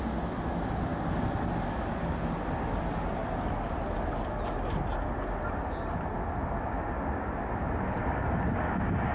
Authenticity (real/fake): real